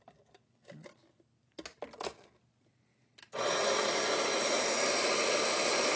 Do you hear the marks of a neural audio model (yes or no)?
no